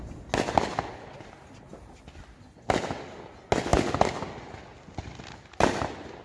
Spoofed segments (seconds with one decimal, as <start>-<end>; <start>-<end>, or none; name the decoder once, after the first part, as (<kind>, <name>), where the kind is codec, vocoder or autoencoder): none